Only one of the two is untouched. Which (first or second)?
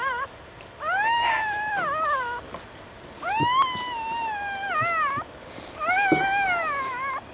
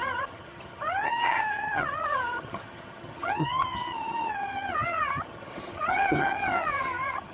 first